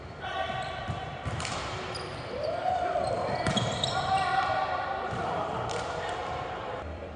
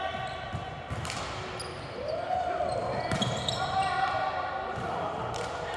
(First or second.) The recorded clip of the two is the second